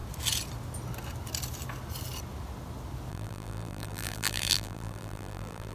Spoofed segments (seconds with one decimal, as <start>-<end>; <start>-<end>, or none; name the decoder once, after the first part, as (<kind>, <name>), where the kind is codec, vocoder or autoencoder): 3.1-5.7 (vocoder, BigVGAN v2)